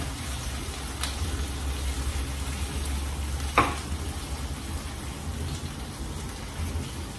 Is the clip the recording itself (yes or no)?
yes